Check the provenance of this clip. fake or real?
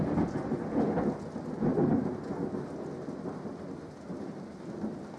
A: real